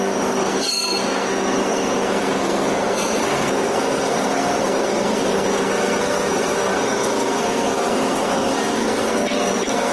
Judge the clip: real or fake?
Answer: fake